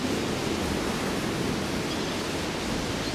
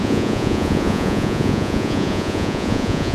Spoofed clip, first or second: second